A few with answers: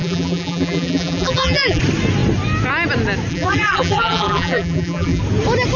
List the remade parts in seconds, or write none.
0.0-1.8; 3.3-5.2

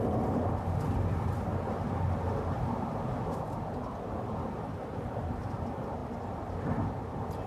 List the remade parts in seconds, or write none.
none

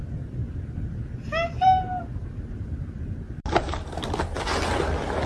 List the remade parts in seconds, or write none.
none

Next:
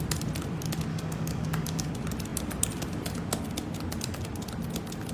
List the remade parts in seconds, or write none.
0.9-1.9